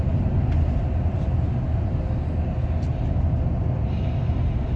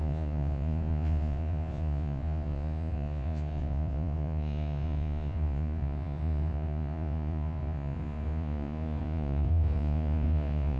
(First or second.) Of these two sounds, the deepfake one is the second